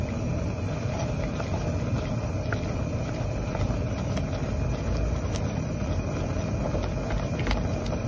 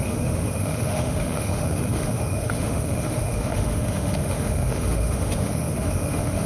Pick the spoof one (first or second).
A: second